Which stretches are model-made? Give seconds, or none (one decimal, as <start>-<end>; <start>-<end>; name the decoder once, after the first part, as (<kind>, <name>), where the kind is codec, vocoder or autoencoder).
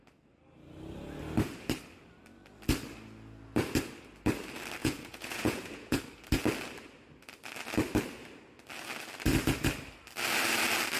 4.8-6.0 (vocoder, Vocos)